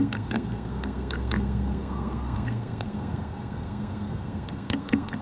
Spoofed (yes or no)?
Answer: yes